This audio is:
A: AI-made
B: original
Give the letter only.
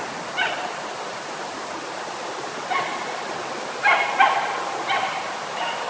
B